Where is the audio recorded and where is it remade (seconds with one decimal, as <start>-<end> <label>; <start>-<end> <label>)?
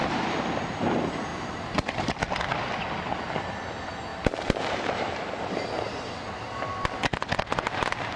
0.0-0.8 remade; 0.8-1.3 recorded; 1.3-2.1 remade; 2.1-4.1 recorded; 4.1-5.3 remade; 5.3-8.2 recorded